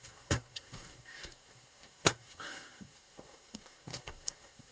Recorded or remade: remade